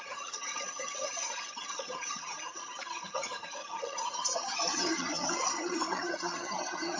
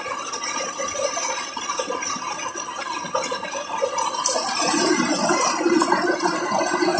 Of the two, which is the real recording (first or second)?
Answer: second